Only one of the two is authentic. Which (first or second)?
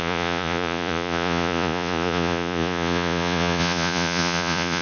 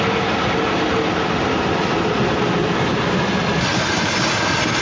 second